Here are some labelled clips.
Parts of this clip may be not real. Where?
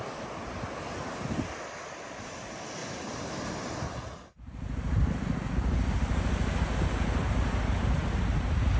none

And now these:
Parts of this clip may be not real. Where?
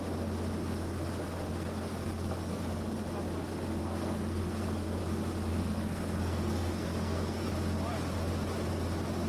1.5-2.6; 3.8-5.0; 5.5-7.5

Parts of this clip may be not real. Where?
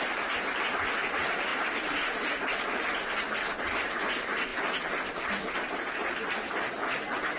none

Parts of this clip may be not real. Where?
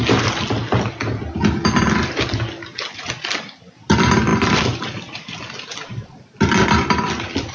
none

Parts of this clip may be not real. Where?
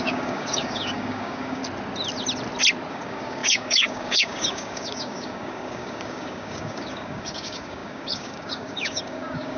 0.0-1.6; 2.9-9.6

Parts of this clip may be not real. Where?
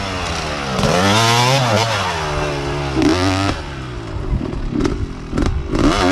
none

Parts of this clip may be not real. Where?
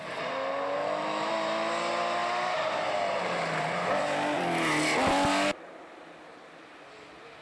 0.8-1.3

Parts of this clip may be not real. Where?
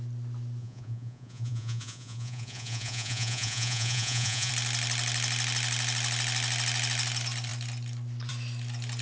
0.6-4.5